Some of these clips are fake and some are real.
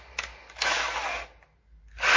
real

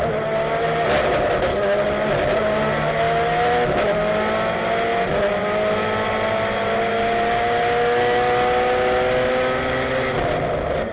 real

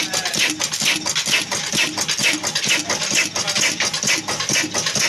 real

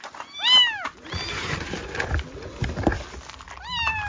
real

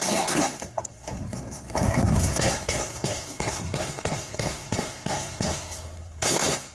fake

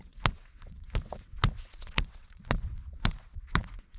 fake